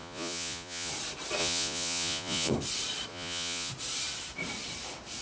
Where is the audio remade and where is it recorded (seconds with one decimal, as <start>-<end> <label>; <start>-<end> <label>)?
0.0-0.9 remade; 0.9-1.4 recorded; 1.4-2.5 remade; 2.5-3.1 recorded; 3.1-3.7 remade; 3.7-5.2 recorded